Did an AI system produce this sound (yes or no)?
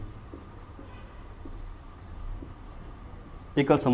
yes